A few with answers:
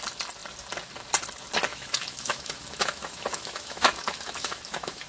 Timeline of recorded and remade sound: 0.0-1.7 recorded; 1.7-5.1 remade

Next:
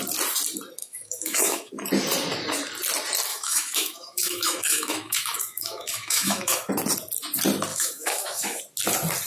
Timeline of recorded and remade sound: 0.0-0.8 recorded; 0.8-1.7 remade; 1.7-3.3 recorded; 3.3-6.7 remade; 6.7-7.7 recorded; 7.7-8.6 remade; 8.6-9.3 recorded